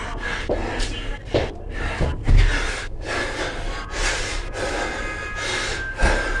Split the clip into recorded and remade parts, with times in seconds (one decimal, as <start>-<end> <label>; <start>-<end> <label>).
0.0-1.1 recorded; 1.1-4.7 remade; 4.7-6.4 recorded